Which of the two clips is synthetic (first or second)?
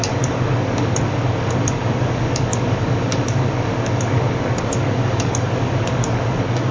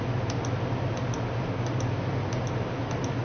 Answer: first